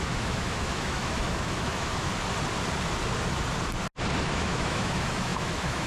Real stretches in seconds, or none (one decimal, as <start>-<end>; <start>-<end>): 2.1-4.2